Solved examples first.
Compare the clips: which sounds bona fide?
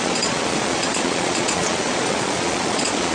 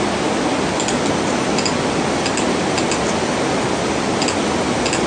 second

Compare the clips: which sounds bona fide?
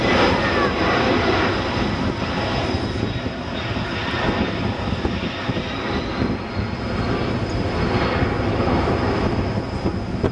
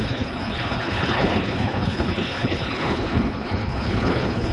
first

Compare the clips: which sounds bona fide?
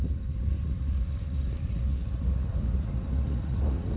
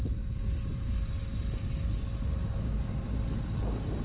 second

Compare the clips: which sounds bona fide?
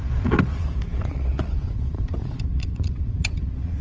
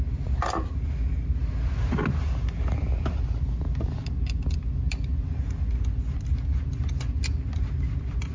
second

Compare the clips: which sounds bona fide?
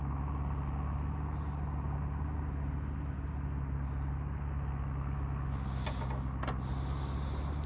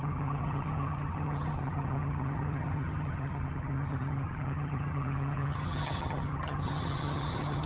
first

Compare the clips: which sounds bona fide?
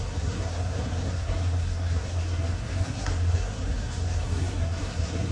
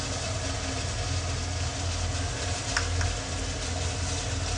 second